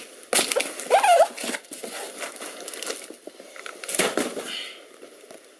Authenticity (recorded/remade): recorded